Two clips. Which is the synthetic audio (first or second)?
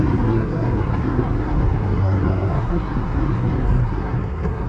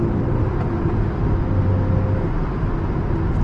first